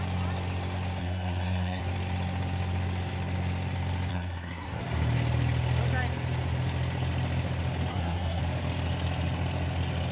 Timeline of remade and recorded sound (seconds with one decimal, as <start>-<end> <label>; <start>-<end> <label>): 0.0-1.0 recorded; 1.0-1.8 remade; 1.8-4.1 recorded; 4.1-4.8 remade; 4.8-7.9 recorded; 7.9-8.4 remade; 8.4-10.1 recorded